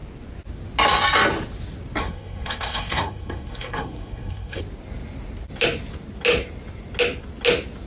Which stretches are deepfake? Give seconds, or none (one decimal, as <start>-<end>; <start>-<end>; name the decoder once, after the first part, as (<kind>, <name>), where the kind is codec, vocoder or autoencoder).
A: 2.0-4.6 (codec, SNAC)